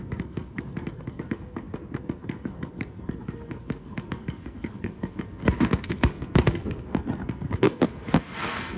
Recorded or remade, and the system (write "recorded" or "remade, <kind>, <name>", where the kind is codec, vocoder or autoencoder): remade, codec, SNAC